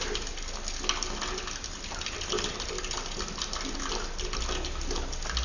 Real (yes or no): yes